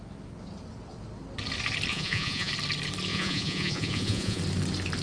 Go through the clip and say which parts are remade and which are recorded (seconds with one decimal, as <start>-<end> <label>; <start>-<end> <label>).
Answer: 0.0-1.9 recorded; 1.9-2.5 remade; 2.5-3.1 recorded; 3.1-4.4 remade; 4.4-5.0 recorded